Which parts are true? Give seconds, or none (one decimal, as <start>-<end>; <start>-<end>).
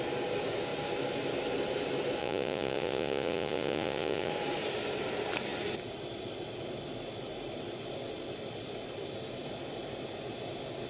0.0-2.2; 4.3-10.9